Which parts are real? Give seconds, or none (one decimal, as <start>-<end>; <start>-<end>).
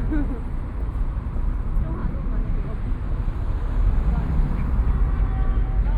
0.0-6.0